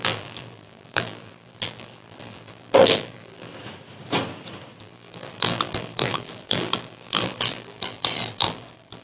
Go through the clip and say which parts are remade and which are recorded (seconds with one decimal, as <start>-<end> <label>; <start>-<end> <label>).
0.0-3.5 remade; 3.5-4.8 recorded; 4.8-9.0 remade